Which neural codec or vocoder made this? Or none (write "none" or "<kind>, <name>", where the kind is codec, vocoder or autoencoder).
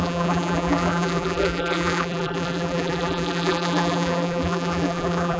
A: vocoder, BigVGAN v2